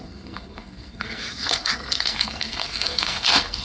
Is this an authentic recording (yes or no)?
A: no